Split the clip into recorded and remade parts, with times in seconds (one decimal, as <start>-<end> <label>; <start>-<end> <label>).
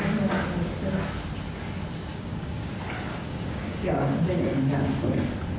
0.0-2.1 recorded; 2.1-2.7 remade; 2.7-3.1 recorded; 3.1-4.2 remade; 4.2-5.6 recorded